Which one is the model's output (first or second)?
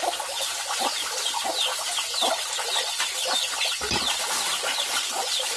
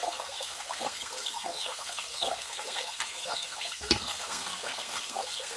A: second